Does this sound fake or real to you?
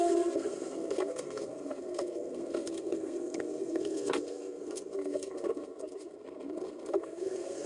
fake